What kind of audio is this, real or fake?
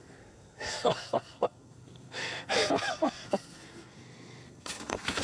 fake